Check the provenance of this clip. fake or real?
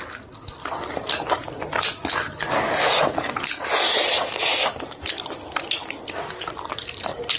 real